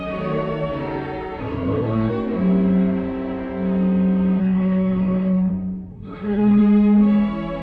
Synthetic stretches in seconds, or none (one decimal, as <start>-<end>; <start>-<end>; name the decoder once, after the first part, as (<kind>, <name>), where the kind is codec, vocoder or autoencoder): 1.4-2.1 (codec, SNAC); 4.4-5.5; 5.9-6.6